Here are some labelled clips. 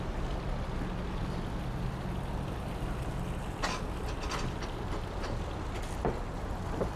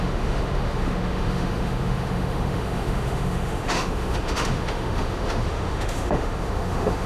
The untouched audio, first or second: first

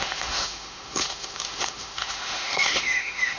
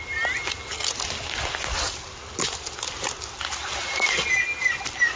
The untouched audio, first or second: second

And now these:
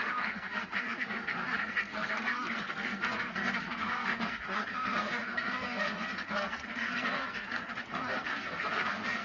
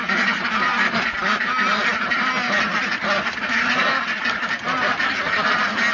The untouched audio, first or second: second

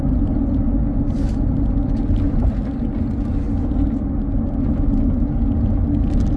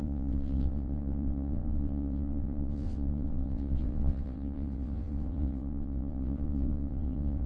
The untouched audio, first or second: first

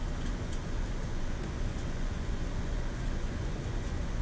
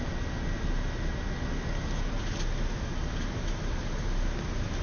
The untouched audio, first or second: second